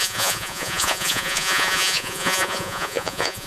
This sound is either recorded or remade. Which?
remade